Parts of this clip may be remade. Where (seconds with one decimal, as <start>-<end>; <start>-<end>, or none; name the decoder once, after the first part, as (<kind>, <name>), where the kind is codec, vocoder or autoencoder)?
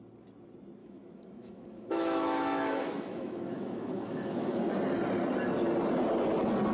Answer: 0.8-4.6 (autoencoder, DAC-VAE)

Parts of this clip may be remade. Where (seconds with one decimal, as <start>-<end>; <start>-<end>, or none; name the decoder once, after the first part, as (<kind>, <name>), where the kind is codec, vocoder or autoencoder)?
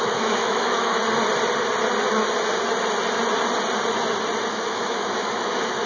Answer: 0.0-1.0 (autoencoder, DAC-VAE); 4.5-5.9